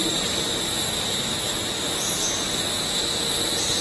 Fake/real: real